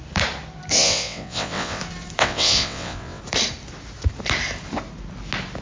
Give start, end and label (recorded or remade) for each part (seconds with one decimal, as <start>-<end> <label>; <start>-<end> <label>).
0.0-0.8 recorded; 0.8-1.8 remade; 1.8-2.2 recorded; 2.2-3.2 remade; 3.2-5.6 recorded